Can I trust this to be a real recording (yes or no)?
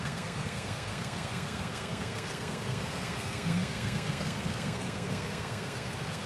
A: no